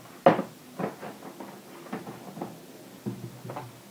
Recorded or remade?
recorded